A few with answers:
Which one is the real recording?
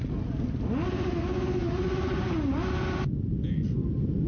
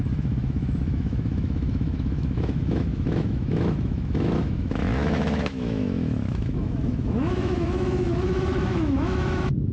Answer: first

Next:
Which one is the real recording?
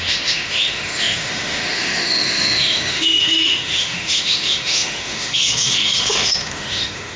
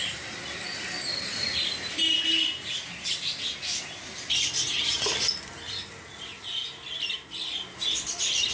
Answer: second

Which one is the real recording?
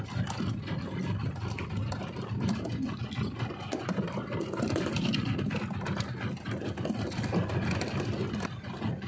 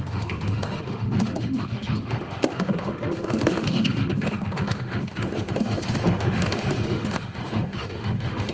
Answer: first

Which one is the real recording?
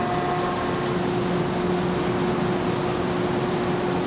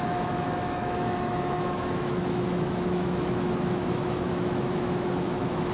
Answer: first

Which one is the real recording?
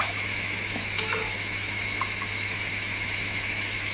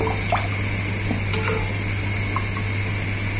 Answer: second